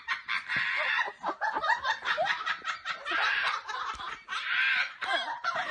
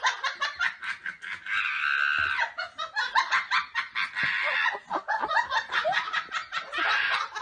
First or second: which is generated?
first